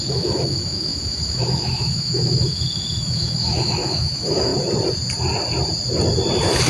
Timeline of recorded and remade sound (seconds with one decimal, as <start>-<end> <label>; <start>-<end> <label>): 0.0-4.5 remade; 4.5-6.7 recorded